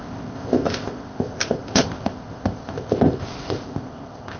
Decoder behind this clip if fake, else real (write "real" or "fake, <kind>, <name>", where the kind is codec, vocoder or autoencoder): fake, codec, ZipCodec